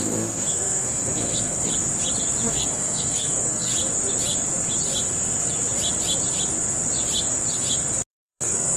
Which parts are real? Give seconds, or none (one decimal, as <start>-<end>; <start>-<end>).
1.7-2.5; 3.7-8.1

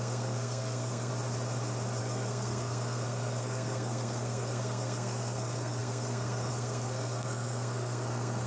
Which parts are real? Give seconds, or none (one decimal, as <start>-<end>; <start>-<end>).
1.1-2.0

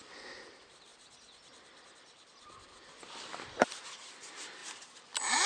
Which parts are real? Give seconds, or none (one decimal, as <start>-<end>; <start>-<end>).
0.0-5.5

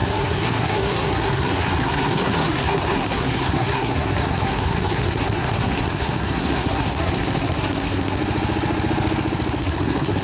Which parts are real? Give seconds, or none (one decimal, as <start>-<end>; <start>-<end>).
8.2-9.6